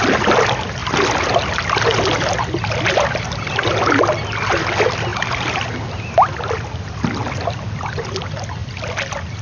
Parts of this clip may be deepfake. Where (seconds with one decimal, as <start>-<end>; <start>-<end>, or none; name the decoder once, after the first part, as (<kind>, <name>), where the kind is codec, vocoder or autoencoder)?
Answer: none

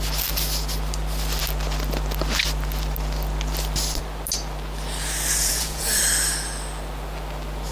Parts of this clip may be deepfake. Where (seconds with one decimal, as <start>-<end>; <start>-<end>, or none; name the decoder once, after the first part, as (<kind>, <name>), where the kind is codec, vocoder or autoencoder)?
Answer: 5.4-6.0 (vocoder, Vocos)